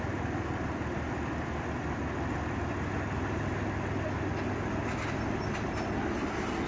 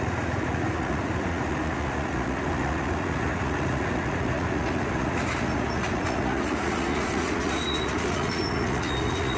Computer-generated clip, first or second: second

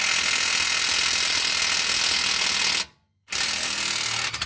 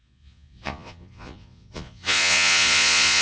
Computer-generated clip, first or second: second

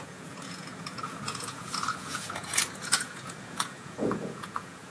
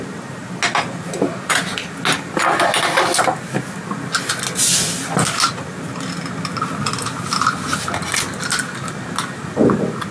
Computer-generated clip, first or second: first